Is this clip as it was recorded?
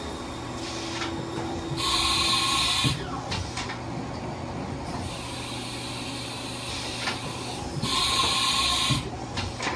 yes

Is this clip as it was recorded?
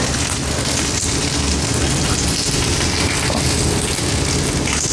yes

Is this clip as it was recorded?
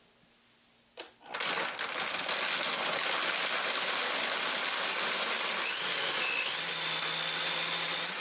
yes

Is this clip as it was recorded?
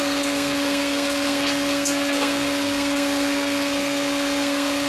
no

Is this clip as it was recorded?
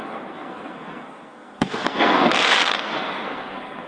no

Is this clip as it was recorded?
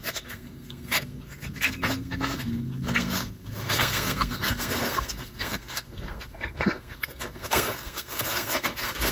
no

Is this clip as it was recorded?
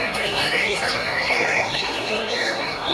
no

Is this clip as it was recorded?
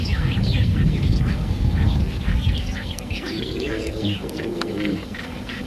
no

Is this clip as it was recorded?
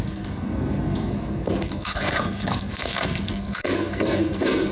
no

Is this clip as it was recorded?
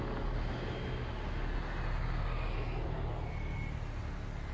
yes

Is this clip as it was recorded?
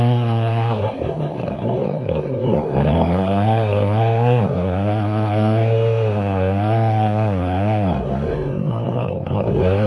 no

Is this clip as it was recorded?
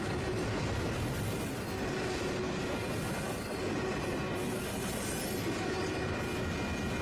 yes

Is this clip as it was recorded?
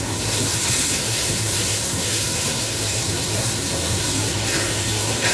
no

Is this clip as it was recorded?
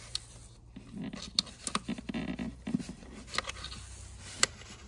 yes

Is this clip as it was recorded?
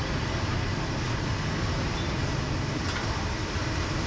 yes